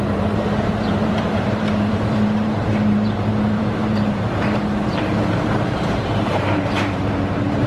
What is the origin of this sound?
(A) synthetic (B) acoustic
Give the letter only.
A